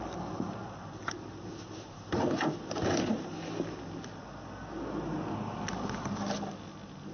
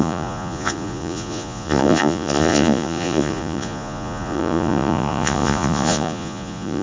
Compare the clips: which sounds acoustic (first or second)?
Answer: first